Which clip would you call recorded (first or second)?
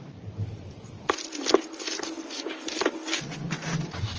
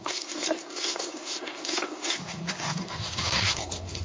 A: first